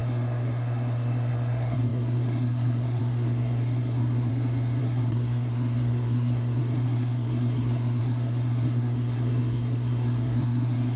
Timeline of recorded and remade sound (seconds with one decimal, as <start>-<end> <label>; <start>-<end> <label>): 0.0-4.3 remade; 4.3-4.8 recorded; 4.8-11.0 remade

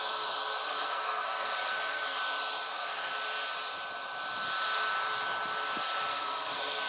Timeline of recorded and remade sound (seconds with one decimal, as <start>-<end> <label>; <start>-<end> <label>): 0.0-2.2 remade; 2.2-2.7 recorded; 2.7-3.1 remade; 3.1-6.1 recorded; 6.1-6.9 remade

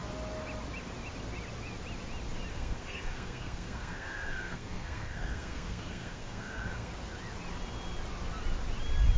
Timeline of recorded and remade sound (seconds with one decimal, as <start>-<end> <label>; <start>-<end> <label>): 0.0-2.5 recorded; 2.5-6.9 remade; 6.9-9.2 recorded

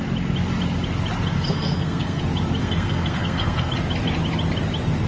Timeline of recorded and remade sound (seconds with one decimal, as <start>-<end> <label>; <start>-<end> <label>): 0.0-1.5 recorded; 1.5-2.2 remade; 2.2-2.6 recorded; 2.6-3.7 remade; 3.7-5.1 recorded

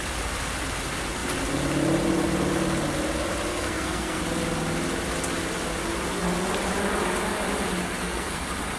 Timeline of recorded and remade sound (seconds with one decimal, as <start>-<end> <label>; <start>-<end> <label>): 0.0-3.5 recorded; 3.5-4.2 remade; 4.2-7.8 recorded; 7.8-8.4 remade; 8.4-8.8 recorded